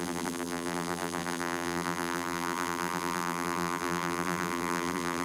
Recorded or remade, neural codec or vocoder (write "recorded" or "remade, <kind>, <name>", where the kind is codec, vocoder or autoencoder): remade, vocoder, BigVGAN v2